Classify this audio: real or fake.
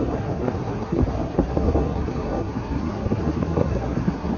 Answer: fake